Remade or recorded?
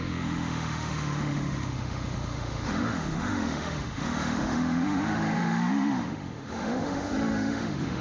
remade